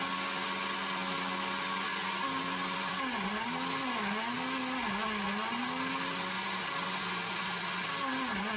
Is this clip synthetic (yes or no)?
no